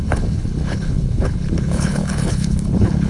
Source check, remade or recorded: remade